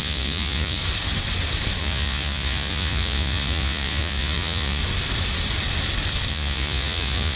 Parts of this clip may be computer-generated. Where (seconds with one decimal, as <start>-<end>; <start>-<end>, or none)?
0.0-0.8; 1.8-4.8; 6.3-7.4

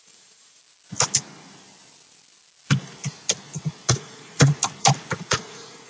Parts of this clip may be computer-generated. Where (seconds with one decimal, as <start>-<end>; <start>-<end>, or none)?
0.0-0.6; 3.9-4.6; 5.3-5.9